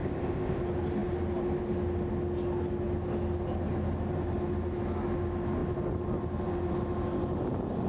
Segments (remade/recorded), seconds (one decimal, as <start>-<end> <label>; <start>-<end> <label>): 0.0-0.6 remade; 0.6-7.9 recorded